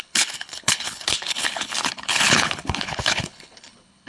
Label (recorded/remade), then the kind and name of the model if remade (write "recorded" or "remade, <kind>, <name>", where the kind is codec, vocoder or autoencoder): remade, codec, HILCodec